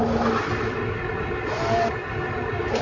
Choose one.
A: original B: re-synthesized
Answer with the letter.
A